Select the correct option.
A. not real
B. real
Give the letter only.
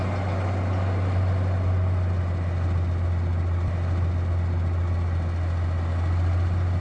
B